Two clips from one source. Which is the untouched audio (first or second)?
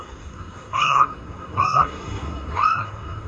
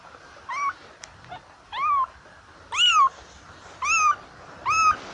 second